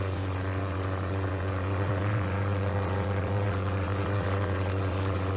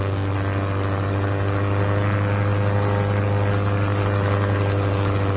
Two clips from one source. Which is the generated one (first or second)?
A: first